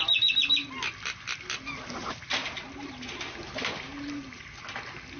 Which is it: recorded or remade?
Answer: recorded